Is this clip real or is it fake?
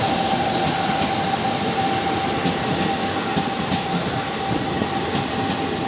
real